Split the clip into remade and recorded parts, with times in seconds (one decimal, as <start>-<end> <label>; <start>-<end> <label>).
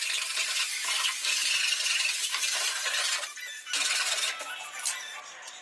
0.0-5.6 recorded